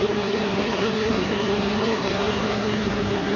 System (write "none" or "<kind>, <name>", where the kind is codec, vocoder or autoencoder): codec, SNAC